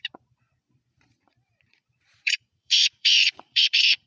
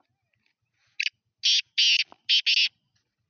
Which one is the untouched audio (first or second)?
second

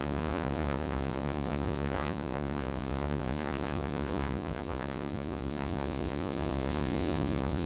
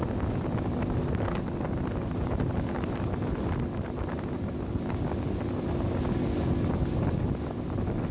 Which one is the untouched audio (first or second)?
second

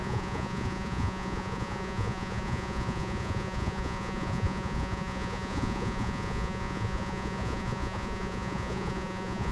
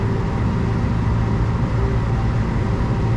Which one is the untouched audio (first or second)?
second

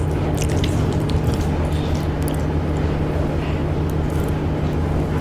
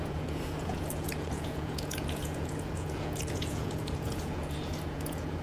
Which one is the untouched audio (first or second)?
first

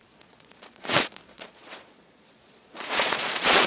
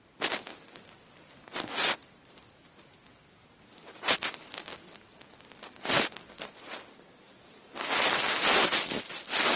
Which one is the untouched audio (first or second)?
second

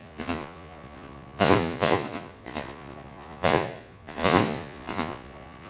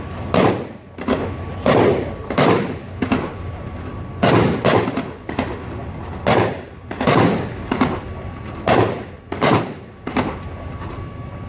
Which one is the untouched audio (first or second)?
second